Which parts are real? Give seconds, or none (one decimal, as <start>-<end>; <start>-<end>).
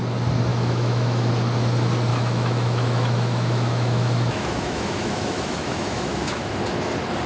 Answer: 0.0-0.5; 1.3-2.1; 6.5-7.3